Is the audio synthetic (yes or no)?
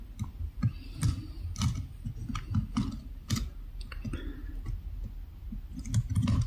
no